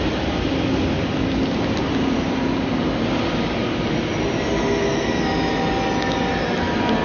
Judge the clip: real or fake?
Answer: real